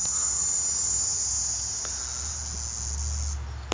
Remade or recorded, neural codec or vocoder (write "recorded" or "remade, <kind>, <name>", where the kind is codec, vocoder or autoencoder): recorded